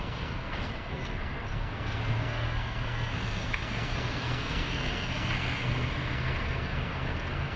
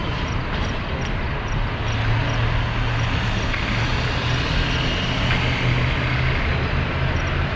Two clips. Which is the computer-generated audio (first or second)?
first